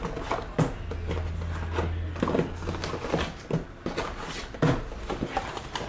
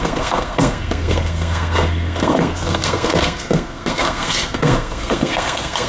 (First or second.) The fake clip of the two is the second